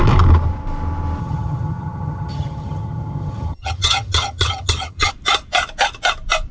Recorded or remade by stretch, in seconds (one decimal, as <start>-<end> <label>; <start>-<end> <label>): 0.0-1.2 recorded; 1.2-5.1 remade; 5.1-6.5 recorded